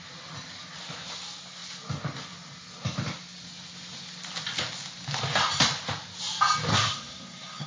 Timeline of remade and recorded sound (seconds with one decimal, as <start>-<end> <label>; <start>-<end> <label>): 0.0-6.7 recorded; 6.7-7.7 remade